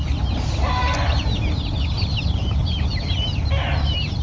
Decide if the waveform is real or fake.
real